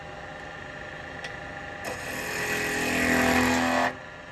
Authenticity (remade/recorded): recorded